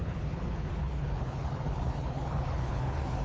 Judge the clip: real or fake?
fake